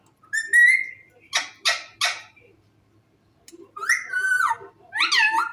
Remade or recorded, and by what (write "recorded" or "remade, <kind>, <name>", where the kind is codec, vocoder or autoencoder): recorded